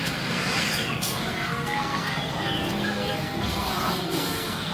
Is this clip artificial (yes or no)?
yes